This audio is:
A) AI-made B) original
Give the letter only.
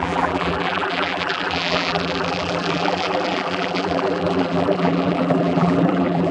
A